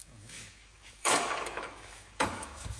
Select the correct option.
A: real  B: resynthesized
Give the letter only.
B